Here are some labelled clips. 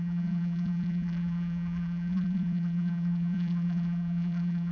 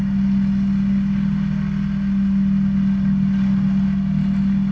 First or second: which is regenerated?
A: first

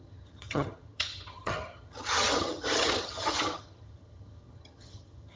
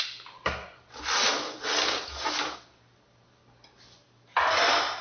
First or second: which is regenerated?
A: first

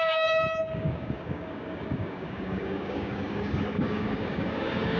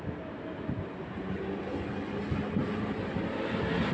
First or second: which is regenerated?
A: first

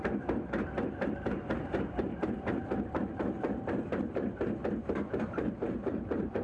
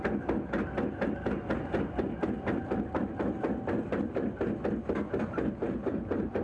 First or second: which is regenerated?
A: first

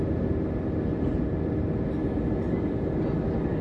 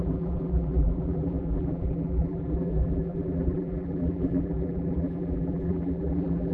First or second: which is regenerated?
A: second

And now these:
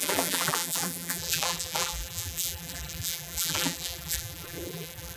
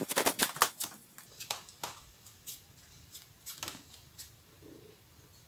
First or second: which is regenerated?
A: first